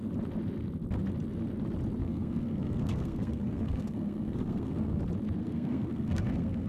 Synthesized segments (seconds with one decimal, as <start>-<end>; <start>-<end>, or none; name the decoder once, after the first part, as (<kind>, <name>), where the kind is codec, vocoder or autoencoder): 2.0-5.0 (codec, SNAC); 5.4-6.7